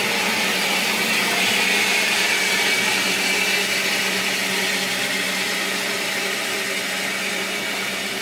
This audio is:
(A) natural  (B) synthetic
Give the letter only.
A